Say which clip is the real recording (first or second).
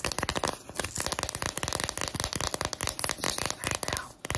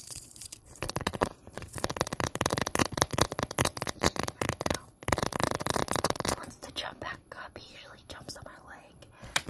first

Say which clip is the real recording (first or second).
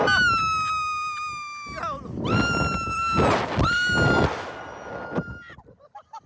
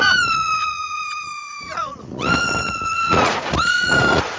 first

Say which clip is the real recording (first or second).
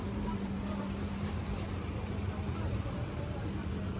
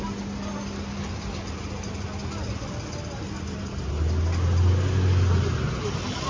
second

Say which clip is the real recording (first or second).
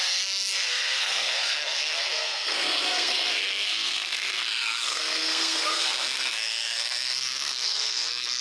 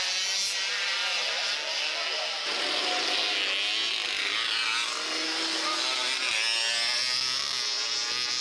second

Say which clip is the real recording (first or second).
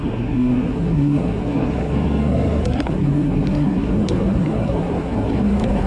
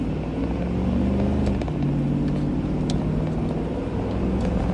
second